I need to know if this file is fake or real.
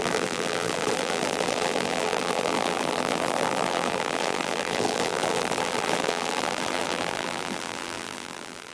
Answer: fake